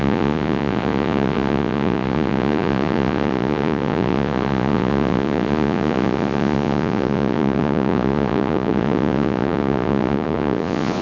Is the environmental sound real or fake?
fake